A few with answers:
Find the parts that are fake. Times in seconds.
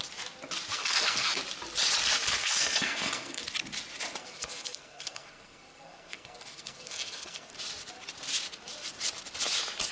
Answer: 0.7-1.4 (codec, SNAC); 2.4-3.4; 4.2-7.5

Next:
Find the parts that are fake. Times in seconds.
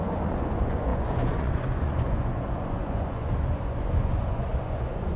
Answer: 0.0-5.2 (vocoder, Vocos)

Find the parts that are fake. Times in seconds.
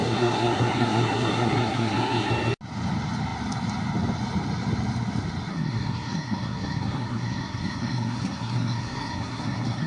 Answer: 0.0-2.3 (codec, SNAC); 5.5-9.9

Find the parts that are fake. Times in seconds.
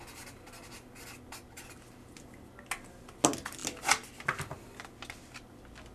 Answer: none